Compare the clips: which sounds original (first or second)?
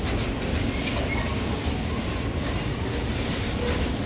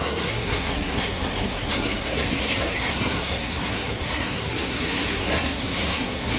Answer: first